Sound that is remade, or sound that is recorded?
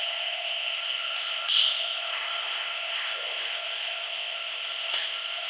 remade